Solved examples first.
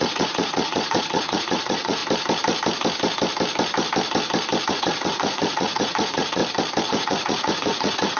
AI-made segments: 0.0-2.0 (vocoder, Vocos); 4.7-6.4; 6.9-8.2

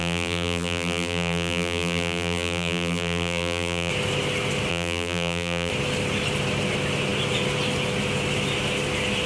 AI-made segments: 0.0-3.9 (vocoder, BigVGAN v2); 4.7-5.7

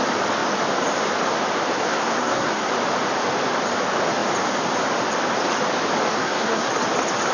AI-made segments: 1.9-2.7 (codec, SNAC); 6.1-6.7

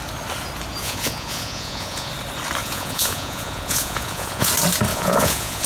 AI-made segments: 0.8-2.1 (vocoder, Vocos); 2.6-4.5; 4.9-5.7

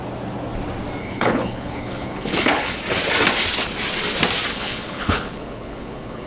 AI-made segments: 1.0-2.8 (codec, HILCodec); 4.5-6.3

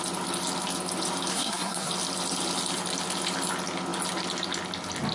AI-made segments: 1.3-1.9 (codec, SNAC)

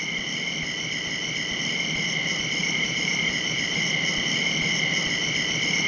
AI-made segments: 2.6-3.8 (vocoder, BigVGAN v2)

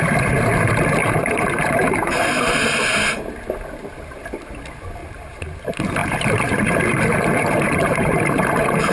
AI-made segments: 1.0-2.7 (vocoder, BigVGAN v2); 5.0-5.6; 6.0-8.9